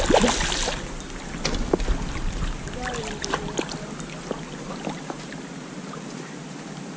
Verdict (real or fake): real